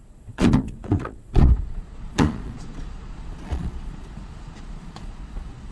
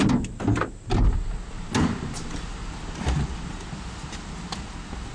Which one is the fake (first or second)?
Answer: first